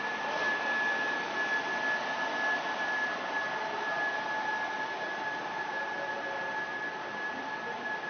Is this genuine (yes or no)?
yes